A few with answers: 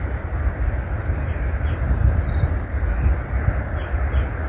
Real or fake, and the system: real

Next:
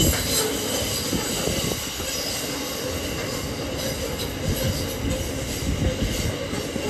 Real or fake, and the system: real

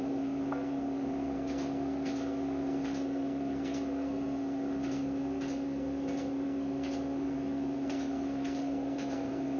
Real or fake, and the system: fake, codec, SNAC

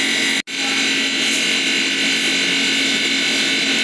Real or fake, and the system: real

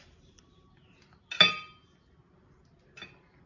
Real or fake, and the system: real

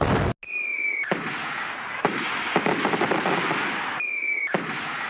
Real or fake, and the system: real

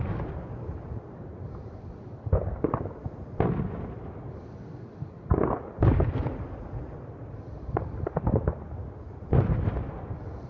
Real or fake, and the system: real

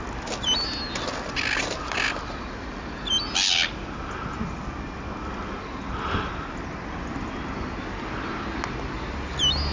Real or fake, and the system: real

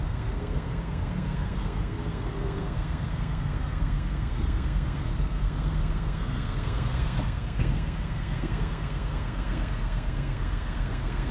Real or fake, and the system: fake, codec, SNAC